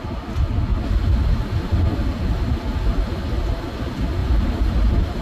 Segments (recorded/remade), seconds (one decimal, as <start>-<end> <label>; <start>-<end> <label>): 0.0-4.2 recorded; 4.2-5.2 remade